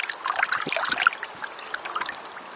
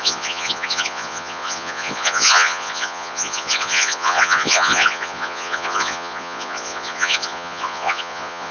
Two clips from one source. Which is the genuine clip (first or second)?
first